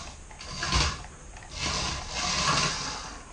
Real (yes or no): yes